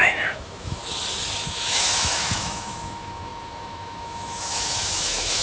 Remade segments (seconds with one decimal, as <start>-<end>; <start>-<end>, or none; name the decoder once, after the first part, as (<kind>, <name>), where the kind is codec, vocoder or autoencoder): 0.0-0.8 (autoencoder, DAC-VAE); 1.4-5.4